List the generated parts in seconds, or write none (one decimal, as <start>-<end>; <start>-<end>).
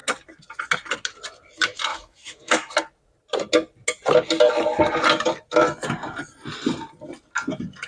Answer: 1.9-2.7